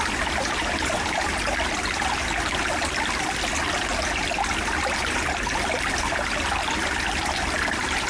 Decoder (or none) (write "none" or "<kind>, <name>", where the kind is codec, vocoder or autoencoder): none